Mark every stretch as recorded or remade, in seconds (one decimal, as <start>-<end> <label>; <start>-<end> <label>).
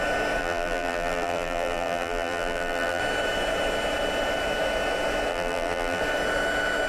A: 0.0-0.4 recorded; 0.4-3.0 remade; 3.0-5.3 recorded; 5.3-6.0 remade; 6.0-6.9 recorded